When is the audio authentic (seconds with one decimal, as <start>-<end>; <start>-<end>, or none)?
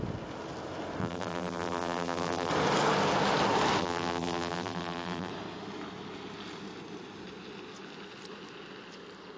0.0-1.0; 2.5-3.8; 5.3-9.4